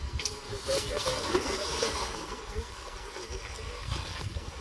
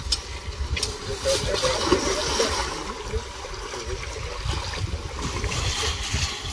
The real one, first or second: second